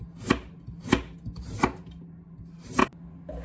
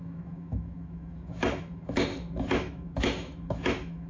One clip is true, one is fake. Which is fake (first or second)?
second